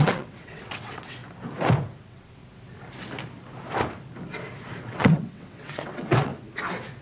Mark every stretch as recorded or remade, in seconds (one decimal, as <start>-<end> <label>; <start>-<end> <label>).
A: 0.0-1.2 remade; 1.2-2.0 recorded; 2.0-2.4 remade; 2.4-4.8 recorded; 4.8-6.3 remade; 6.3-7.0 recorded